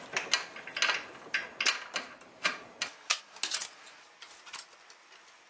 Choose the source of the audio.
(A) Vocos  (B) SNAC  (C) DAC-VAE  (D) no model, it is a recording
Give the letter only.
D